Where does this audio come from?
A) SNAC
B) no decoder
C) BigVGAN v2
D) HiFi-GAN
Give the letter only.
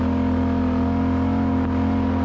B